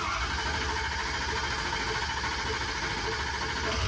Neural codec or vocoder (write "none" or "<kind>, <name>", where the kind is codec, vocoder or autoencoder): none